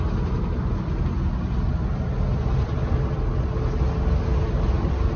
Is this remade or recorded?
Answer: recorded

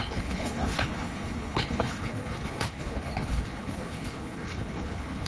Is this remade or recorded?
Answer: remade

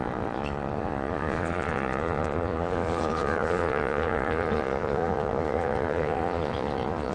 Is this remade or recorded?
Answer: remade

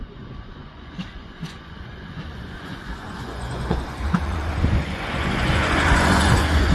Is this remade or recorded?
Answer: remade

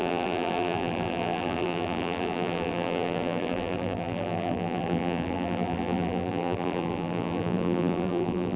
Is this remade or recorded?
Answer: remade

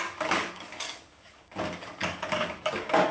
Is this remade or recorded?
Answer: remade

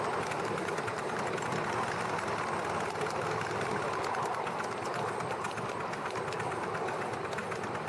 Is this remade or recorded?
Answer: recorded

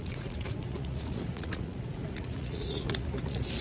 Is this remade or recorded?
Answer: remade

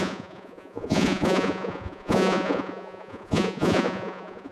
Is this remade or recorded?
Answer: remade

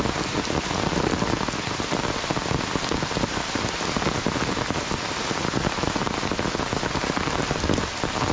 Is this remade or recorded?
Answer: recorded